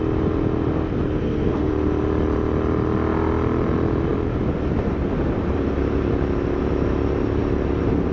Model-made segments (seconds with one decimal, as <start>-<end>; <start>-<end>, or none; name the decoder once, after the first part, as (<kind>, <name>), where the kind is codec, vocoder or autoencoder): 1.2-1.7 (codec, SNAC)